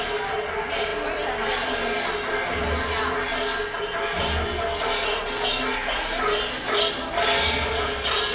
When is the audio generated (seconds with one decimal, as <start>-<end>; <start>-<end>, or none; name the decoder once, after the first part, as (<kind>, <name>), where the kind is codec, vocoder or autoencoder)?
none